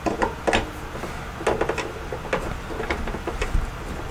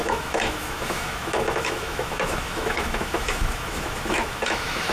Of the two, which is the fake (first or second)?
second